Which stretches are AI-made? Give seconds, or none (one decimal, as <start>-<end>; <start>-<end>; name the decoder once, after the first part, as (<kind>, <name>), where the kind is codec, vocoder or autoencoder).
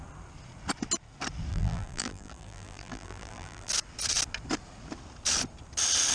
1.5-3.7 (vocoder, BigVGAN v2)